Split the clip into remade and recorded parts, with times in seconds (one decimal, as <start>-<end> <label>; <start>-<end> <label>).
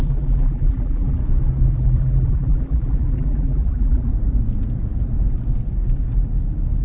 0.0-1.2 remade; 1.2-1.7 recorded; 1.7-4.1 remade; 4.1-6.8 recorded